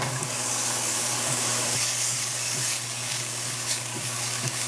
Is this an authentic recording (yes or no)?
no